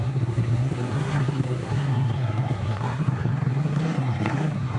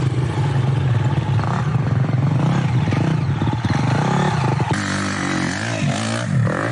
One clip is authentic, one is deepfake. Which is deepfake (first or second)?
first